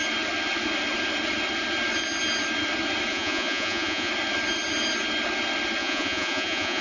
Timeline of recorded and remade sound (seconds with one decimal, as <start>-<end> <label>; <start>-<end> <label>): 0.0-3.1 recorded; 3.1-4.1 remade; 4.1-5.8 recorded; 5.8-6.8 remade